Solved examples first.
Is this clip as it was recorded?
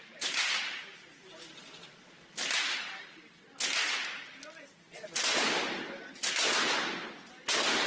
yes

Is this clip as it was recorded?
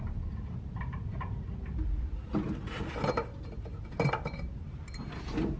yes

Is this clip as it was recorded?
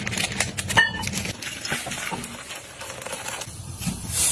yes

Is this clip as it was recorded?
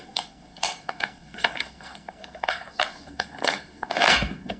no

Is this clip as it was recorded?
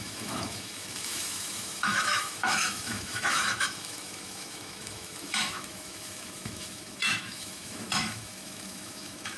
no